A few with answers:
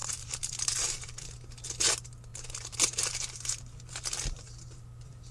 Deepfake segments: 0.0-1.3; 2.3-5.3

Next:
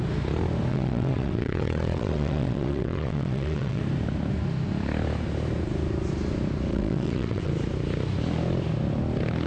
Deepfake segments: 0.7-3.8; 6.7-7.5

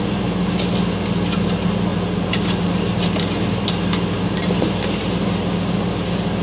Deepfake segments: none

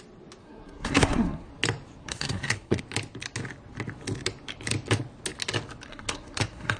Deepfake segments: 0.4-1.5; 2.0-2.8; 5.9-6.8